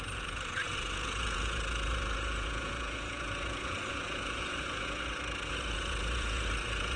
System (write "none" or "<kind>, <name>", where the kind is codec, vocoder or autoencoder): vocoder, Vocos